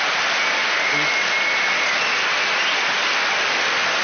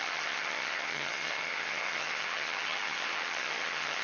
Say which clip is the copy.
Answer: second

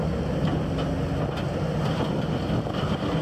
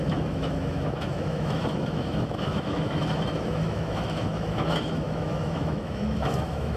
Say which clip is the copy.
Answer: second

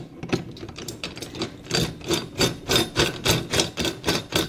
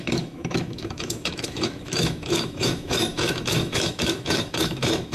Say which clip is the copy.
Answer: second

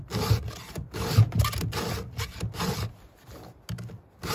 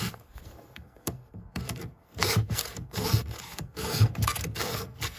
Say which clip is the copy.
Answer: second